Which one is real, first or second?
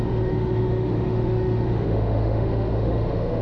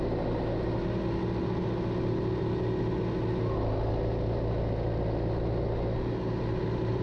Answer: second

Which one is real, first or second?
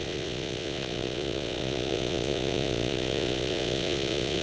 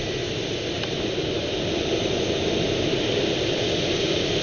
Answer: second